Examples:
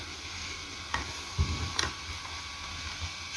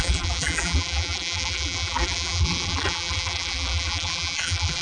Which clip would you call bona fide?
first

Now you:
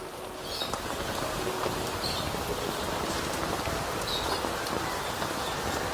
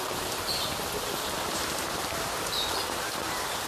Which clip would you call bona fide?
first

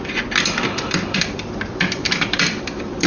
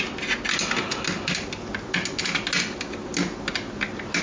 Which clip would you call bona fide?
second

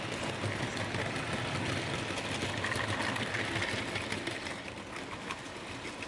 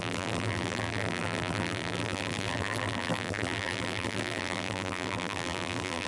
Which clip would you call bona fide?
first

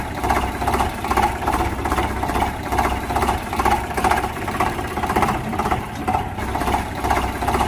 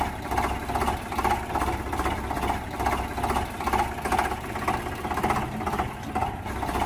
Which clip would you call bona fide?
second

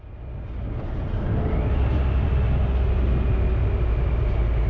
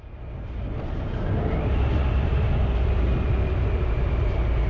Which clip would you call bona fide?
first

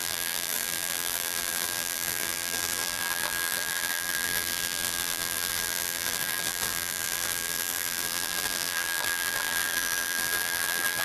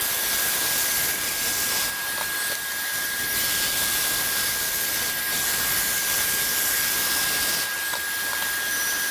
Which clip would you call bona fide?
second